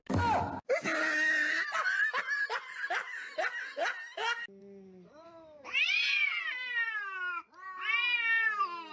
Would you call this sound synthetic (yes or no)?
no